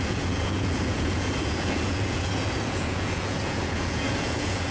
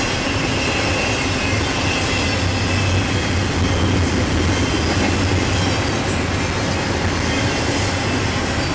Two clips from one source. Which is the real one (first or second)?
second